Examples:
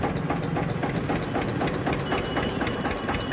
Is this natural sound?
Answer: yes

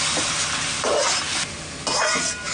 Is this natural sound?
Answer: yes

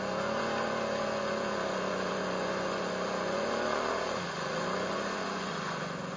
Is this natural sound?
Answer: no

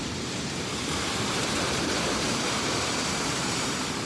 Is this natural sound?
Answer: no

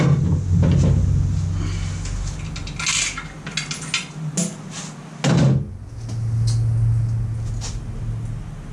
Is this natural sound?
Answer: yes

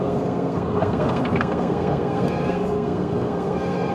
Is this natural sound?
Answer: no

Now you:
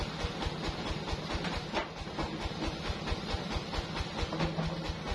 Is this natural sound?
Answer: yes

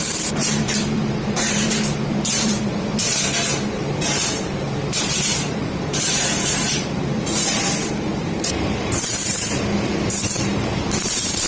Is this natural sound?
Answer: no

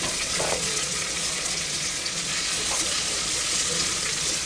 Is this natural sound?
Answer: no